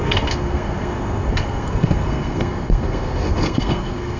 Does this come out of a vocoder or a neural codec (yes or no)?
yes